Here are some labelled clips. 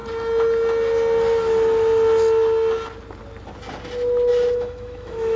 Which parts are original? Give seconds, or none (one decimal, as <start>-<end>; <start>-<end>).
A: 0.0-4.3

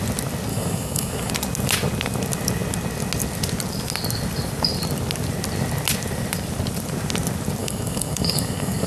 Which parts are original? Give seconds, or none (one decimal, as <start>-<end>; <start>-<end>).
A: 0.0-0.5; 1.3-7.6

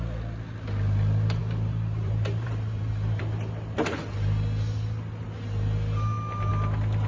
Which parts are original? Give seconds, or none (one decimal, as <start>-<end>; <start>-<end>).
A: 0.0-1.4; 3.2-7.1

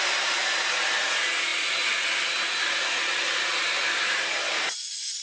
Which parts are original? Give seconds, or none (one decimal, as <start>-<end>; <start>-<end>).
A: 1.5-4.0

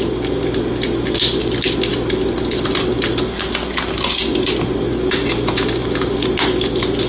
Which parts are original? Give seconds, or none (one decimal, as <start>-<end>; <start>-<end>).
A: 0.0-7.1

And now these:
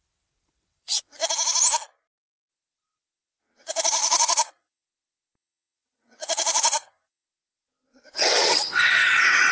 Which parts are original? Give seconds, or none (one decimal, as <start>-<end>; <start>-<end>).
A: 1.2-2.5

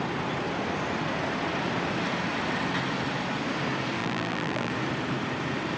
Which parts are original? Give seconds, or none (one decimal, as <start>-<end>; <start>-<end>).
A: 0.0-4.0; 4.7-5.8

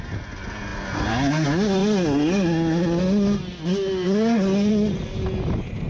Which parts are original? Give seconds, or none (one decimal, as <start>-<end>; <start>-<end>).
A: 0.0-5.9